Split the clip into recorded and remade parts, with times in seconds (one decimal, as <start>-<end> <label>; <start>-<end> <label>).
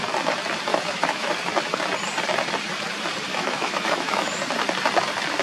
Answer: 0.0-0.7 recorded; 0.7-1.3 remade; 1.3-3.3 recorded; 3.3-4.4 remade; 4.4-5.4 recorded